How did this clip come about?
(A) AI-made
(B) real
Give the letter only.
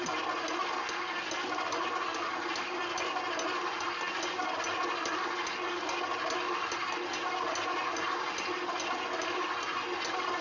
B